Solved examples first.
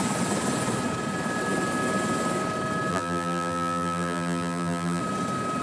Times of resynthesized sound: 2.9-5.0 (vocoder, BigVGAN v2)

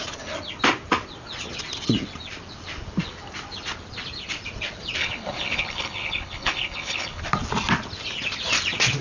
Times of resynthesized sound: 5.0-7.2 (codec, HILCodec)

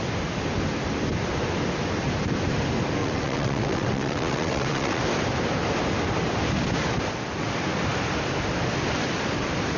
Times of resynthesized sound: 3.0-5.0 (vocoder, WaveNeXt)

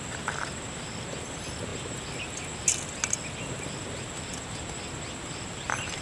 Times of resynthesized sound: none

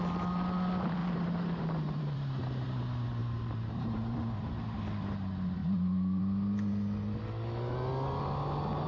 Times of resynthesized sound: 1.0-2.8 (vocoder, BigVGAN v2); 3.2-4.8; 5.6-6.2

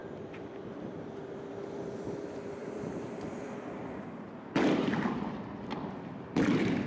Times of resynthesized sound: 0.0-1.1 (vocoder, BigVGAN v2); 2.6-4.2

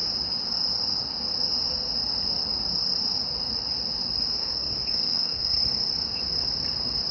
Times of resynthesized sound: 4.4-5.6 (codec, SNAC)

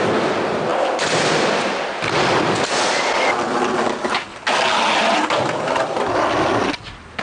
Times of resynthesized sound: none